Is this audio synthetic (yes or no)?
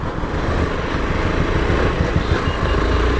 no